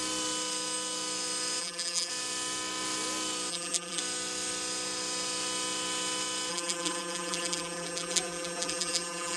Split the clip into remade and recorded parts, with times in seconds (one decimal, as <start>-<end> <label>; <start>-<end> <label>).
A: 0.0-1.6 recorded; 1.6-2.1 remade; 2.1-3.5 recorded; 3.5-4.0 remade; 4.0-6.5 recorded; 6.5-9.4 remade